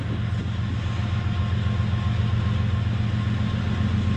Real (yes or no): yes